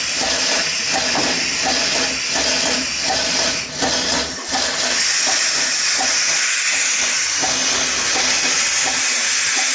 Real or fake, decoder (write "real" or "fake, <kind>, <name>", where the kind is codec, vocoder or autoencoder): real